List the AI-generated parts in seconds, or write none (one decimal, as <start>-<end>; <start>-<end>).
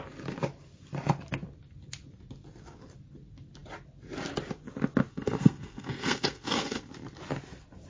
5.1-6.9